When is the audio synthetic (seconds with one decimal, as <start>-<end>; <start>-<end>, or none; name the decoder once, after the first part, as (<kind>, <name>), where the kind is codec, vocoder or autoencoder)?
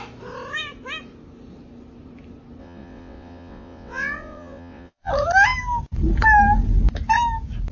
2.6-5.1 (vocoder, WaveNeXt)